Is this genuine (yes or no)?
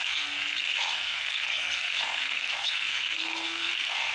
no